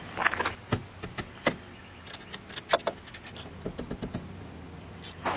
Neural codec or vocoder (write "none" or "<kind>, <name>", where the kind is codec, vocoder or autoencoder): none